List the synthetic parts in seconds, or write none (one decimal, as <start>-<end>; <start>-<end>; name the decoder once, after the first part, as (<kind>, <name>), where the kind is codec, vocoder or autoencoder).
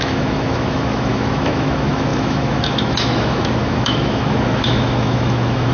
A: 0.0-5.7 (autoencoder, DAC-VAE)